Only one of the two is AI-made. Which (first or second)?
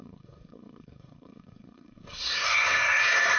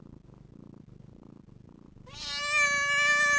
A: first